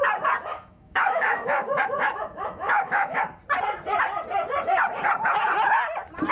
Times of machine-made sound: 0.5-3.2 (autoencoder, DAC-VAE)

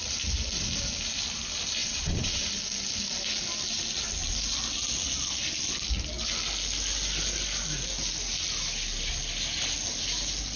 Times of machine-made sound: 1.8-2.5 (vocoder, WaveNeXt)